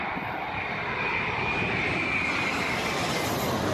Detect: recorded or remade recorded